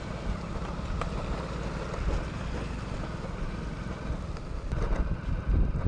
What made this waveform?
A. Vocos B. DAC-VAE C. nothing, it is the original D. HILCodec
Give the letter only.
C